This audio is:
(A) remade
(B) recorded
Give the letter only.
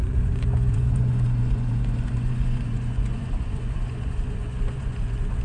A